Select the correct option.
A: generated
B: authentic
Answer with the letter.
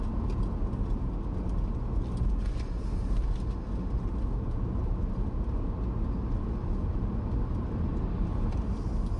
B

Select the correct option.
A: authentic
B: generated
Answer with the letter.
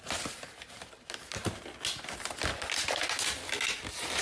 A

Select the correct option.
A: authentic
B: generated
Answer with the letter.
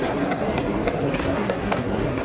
B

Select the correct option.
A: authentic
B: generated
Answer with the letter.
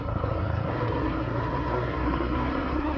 B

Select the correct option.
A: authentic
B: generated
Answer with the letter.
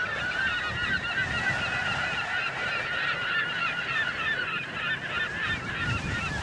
A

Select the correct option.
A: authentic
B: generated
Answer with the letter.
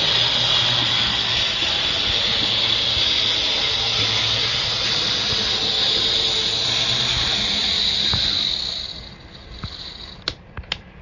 A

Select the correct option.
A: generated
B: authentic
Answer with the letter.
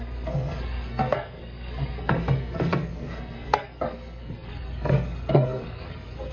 A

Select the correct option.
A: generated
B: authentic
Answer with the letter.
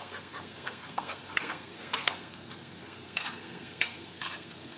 A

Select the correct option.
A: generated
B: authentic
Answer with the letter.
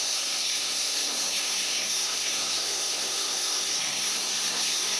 A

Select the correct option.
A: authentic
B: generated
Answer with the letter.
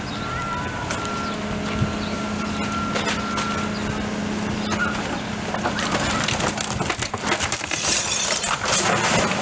A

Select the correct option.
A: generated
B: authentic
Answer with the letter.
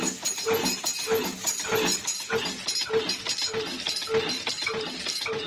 B